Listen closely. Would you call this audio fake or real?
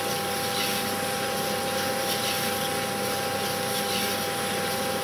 real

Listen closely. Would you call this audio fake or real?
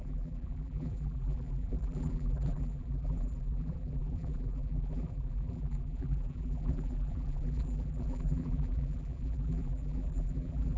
fake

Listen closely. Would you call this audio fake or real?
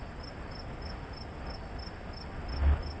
real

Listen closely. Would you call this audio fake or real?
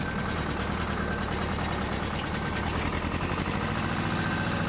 real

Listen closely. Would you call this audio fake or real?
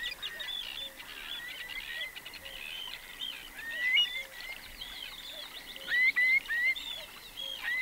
real